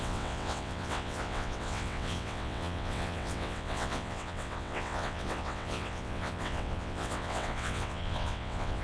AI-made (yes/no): yes